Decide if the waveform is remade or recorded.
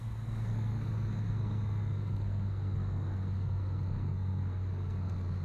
remade